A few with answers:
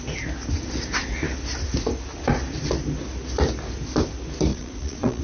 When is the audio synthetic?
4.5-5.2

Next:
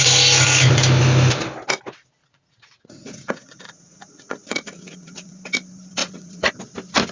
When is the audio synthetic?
2.2-5.3; 6.0-6.5

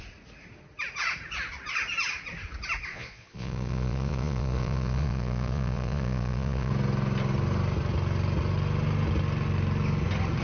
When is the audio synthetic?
2.9-6.7

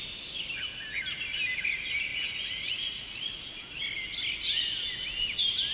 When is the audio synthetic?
2.1-3.8